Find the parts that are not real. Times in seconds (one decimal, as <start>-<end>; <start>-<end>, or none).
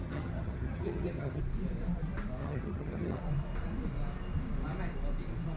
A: 0.0-1.4; 2.4-3.2